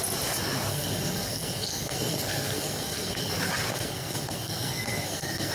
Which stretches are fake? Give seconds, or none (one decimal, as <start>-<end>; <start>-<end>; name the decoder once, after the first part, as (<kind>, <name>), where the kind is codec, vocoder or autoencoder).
0.7-3.3 (codec, SNAC); 3.7-5.5